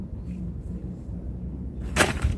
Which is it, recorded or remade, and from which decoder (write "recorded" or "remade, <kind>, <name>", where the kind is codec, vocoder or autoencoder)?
remade, vocoder, BigVGAN v2